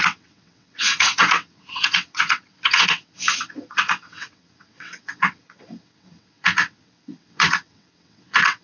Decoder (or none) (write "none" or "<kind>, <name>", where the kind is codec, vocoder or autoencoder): vocoder, WaveNeXt